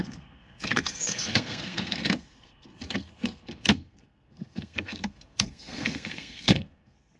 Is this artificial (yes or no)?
yes